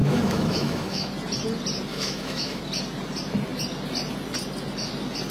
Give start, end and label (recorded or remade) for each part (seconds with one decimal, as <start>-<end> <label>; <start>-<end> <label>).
0.0-1.1 remade; 1.1-1.9 recorded; 1.9-2.6 remade; 2.6-5.3 recorded